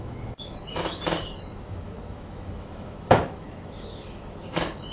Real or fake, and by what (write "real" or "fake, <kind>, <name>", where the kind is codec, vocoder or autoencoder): fake, autoencoder, DAC-VAE